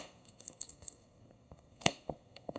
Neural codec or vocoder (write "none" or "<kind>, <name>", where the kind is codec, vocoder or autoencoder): codec, SNAC